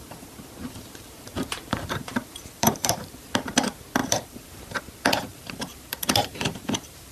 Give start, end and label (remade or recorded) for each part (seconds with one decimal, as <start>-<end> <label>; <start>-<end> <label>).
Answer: 0.0-0.6 recorded; 0.6-3.3 remade; 3.3-4.0 recorded; 4.0-4.8 remade; 4.8-5.3 recorded; 5.3-7.1 remade